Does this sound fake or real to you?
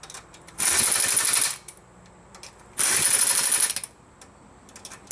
real